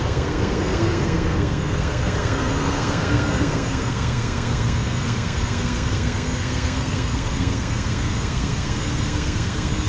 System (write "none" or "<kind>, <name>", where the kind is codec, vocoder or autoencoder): codec, SNAC